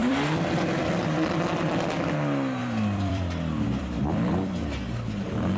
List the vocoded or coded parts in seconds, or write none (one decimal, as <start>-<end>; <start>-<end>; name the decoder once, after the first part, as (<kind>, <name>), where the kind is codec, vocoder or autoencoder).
0.0-1.4 (vocoder, BigVGAN v2); 2.6-4.5